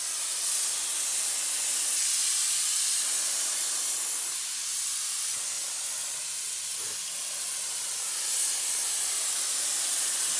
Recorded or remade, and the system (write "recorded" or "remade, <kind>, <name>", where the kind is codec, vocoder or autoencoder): recorded